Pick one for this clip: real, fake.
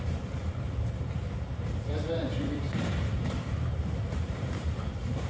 fake